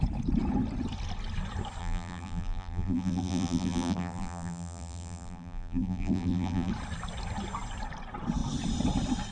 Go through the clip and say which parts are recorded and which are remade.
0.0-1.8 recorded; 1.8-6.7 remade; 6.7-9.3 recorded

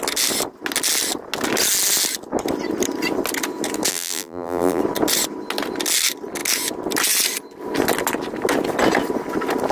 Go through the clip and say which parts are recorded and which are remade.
0.0-3.9 recorded; 3.9-4.8 remade; 4.8-9.7 recorded

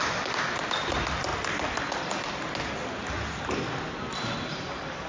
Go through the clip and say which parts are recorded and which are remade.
0.0-1.3 remade; 1.3-4.0 recorded; 4.0-5.1 remade

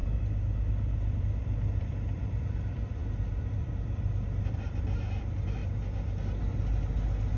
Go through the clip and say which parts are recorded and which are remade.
0.0-1.2 recorded; 1.2-5.6 remade; 5.6-6.4 recorded; 6.4-7.4 remade

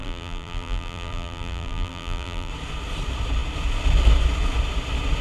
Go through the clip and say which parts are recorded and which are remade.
0.0-2.5 remade; 2.5-5.2 recorded